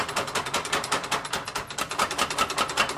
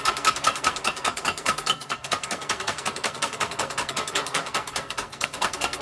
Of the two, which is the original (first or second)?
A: first